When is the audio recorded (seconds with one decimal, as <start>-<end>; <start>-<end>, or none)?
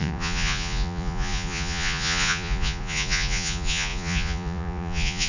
none